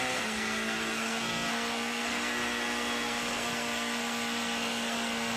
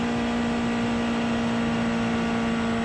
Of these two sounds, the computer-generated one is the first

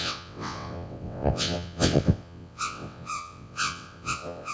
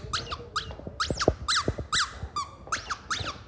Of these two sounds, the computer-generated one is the first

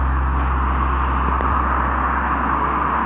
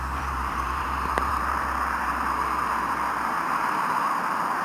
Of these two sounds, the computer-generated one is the second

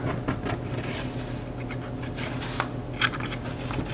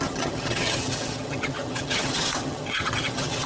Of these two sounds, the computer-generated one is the second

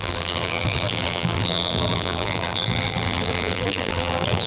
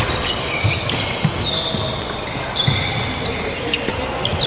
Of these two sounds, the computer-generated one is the first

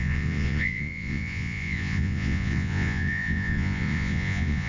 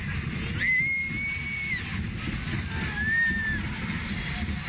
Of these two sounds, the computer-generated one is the first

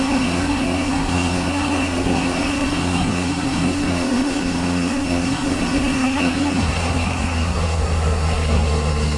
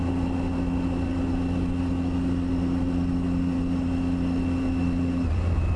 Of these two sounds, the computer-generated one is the first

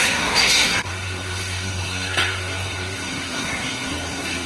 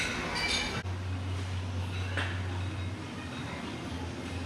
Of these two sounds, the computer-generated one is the first